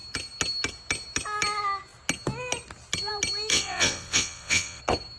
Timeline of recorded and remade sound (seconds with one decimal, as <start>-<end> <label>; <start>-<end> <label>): 0.0-3.5 recorded; 3.5-4.8 remade; 4.8-5.2 recorded